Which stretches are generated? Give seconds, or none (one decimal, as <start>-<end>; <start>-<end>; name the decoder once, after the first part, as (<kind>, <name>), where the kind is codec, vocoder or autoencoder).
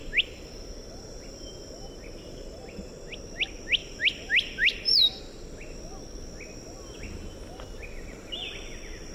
0.0-2.9 (vocoder, BigVGAN v2); 3.8-5.2